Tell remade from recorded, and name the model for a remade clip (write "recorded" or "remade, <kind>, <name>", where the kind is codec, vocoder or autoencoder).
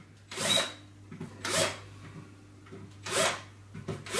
recorded